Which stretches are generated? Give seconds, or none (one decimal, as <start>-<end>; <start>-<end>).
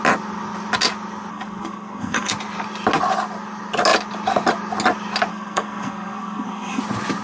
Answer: 1.3-2.3; 5.3-6.8